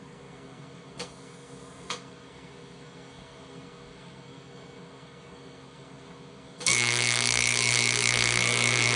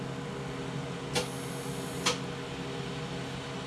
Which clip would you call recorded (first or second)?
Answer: second